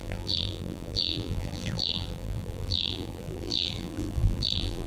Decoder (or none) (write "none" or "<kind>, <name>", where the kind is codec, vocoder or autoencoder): vocoder, BigVGAN v2